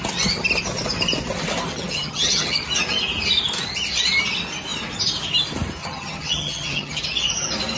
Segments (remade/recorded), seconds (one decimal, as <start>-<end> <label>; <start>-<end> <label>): 0.0-1.7 recorded; 1.7-2.6 remade; 2.6-5.8 recorded; 5.8-7.0 remade; 7.0-7.8 recorded

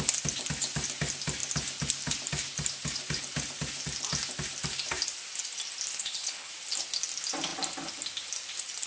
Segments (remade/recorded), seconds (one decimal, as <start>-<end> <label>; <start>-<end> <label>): 0.0-5.9 recorded; 5.9-6.5 remade; 6.5-8.9 recorded